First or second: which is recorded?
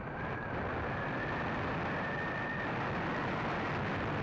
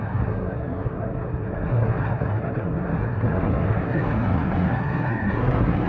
first